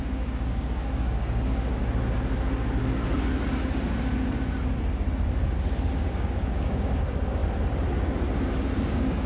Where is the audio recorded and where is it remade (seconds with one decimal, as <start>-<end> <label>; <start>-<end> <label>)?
0.0-1.8 remade; 1.8-6.0 recorded; 6.0-7.4 remade; 7.4-8.6 recorded; 8.6-9.3 remade

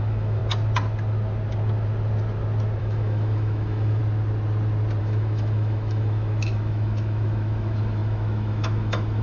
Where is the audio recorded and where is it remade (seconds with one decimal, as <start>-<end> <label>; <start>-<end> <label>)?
0.0-0.4 remade; 0.4-2.8 recorded; 2.8-4.0 remade; 4.0-5.0 recorded; 5.0-9.2 remade

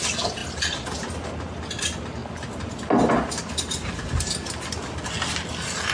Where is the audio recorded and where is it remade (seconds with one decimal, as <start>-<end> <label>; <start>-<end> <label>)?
0.0-5.9 recorded

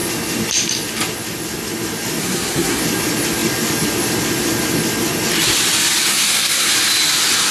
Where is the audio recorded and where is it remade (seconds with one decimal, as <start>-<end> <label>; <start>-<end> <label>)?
0.0-2.2 recorded; 2.2-2.8 remade; 2.8-6.1 recorded; 6.1-6.7 remade; 6.7-7.5 recorded